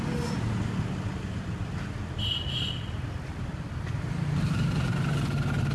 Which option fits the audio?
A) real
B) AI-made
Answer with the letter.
A